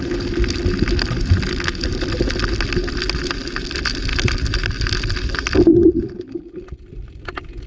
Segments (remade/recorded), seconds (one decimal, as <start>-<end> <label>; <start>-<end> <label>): 0.0-7.7 recorded